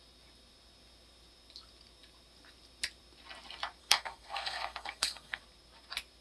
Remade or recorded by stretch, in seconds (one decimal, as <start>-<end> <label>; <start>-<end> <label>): 0.0-3.8 recorded; 3.8-5.4 remade; 5.4-6.2 recorded